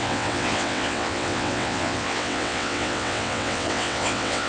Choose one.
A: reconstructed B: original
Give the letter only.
A